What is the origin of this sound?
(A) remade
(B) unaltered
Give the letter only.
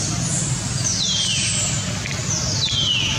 B